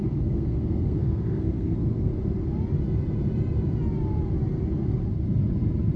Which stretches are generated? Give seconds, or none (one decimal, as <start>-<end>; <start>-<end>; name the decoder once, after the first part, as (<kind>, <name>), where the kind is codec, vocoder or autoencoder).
0.0-2.1 (codec, SNAC)